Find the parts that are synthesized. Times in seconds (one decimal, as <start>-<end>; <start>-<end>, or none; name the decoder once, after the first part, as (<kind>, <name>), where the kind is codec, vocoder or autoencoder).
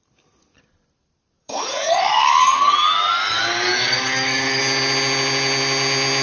1.4-4.6 (codec, DAC)